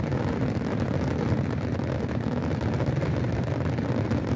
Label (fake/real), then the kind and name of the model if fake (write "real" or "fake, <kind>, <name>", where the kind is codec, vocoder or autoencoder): real